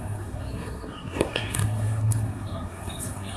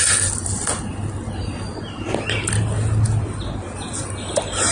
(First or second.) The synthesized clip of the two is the first